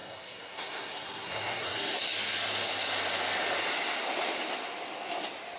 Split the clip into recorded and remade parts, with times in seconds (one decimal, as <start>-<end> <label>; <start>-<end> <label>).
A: 0.0-2.0 remade; 2.0-5.6 recorded